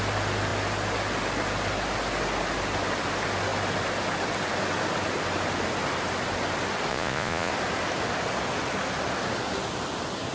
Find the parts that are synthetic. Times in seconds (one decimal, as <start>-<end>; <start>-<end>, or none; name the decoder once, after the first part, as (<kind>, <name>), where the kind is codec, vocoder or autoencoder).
6.9-7.5 (vocoder, Vocos)